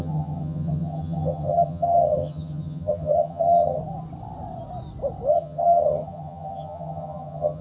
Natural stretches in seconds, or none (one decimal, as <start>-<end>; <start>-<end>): 3.8-5.3

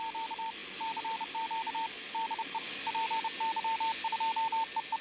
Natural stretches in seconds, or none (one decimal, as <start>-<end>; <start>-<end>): 0.0-5.0

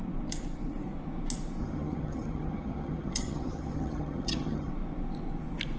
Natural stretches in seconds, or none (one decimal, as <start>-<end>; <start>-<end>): 0.0-1.6; 4.7-5.8

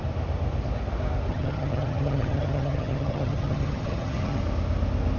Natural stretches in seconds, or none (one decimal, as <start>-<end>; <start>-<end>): 0.0-1.3; 4.4-5.2

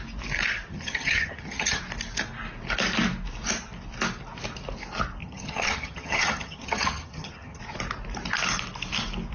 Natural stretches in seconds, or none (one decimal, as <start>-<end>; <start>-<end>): 0.0-0.7; 1.8-5.2; 7.6-9.3

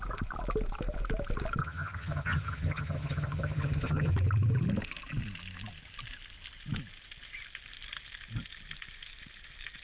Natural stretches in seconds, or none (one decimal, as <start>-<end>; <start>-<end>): 0.0-1.6; 4.1-9.8

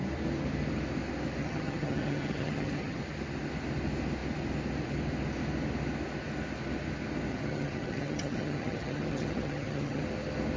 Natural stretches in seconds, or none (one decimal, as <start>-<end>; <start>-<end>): 0.0-1.4; 3.0-7.3; 10.0-10.6